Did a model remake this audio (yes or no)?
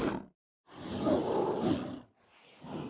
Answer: no